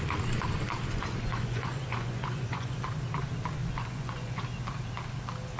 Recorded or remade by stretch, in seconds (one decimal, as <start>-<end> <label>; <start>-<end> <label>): 0.0-0.9 recorded; 0.9-2.8 remade; 2.8-3.6 recorded; 3.6-4.4 remade; 4.4-5.6 recorded